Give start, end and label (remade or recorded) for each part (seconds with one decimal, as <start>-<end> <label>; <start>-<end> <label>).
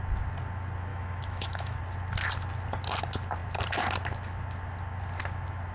0.0-0.9 recorded; 0.9-1.8 remade; 1.8-5.7 recorded